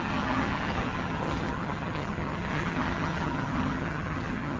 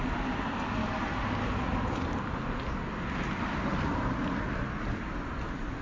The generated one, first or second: first